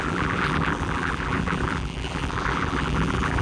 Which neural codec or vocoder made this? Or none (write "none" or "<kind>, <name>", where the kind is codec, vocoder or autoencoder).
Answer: vocoder, BigVGAN v2